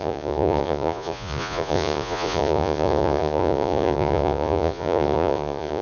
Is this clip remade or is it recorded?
remade